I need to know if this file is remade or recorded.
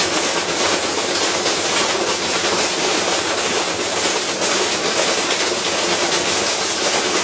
recorded